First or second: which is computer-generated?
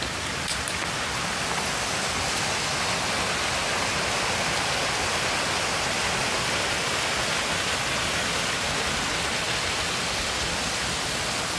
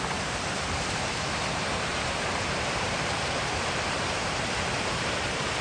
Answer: second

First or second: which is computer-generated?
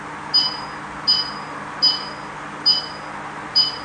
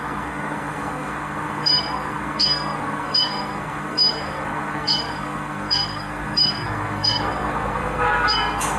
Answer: second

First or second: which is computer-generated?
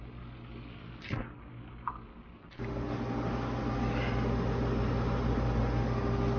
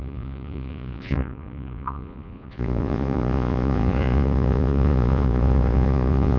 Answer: second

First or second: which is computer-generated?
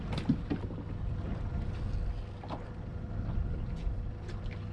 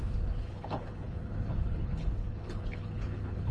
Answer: second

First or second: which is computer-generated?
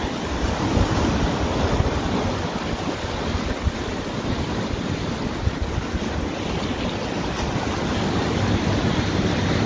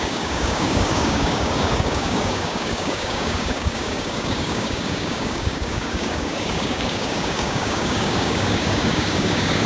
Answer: second